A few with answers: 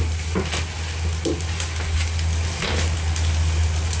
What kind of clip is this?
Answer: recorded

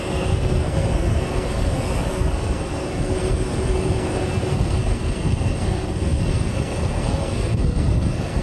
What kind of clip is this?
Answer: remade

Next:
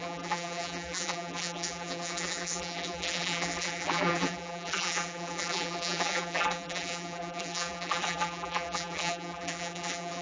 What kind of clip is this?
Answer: remade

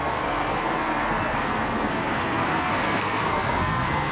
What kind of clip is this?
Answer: remade